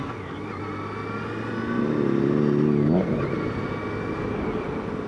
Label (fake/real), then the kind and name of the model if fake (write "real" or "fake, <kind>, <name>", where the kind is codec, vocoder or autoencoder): real